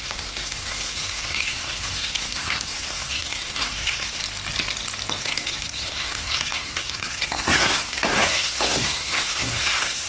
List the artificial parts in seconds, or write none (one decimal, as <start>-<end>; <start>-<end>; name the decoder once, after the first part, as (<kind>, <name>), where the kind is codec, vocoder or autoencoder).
0.0-4.2 (codec, SNAC); 5.2-10.1